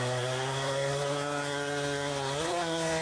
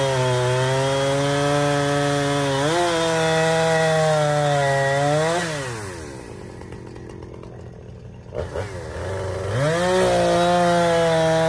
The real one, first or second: second